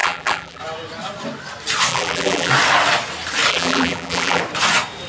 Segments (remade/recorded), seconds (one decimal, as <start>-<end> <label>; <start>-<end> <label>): 0.0-0.6 remade; 0.6-1.9 recorded; 1.9-2.5 remade; 2.5-3.5 recorded; 3.5-4.4 remade; 4.4-5.1 recorded